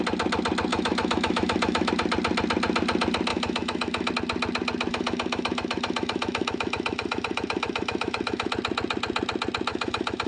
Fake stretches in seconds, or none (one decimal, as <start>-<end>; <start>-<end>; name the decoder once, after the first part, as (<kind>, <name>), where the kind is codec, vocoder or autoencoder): 0.7-1.9 (autoencoder, DAC-VAE); 3.3-4.1; 4.9-8.5; 9.7-10.3